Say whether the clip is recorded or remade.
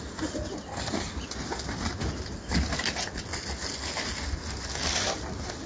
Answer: recorded